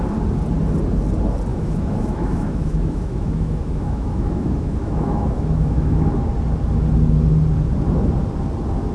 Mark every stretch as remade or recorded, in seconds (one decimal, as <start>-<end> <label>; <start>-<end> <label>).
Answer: 0.0-1.5 recorded; 1.5-6.1 remade; 6.1-8.9 recorded